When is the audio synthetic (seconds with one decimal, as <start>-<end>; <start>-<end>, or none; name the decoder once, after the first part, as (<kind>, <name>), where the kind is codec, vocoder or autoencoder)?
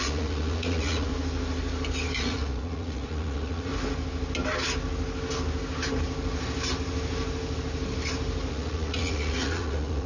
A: 0.0-1.1 (vocoder, Vocos); 2.2-3.7; 8.5-10.1